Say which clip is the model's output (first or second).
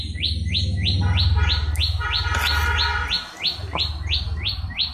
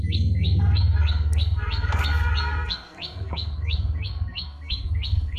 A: second